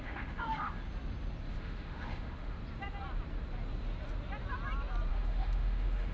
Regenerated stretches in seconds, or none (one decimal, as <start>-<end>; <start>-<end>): 0.0-0.8; 1.5-2.6; 5.1-6.1